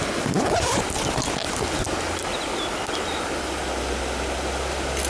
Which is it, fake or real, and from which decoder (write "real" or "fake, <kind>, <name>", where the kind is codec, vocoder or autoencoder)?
real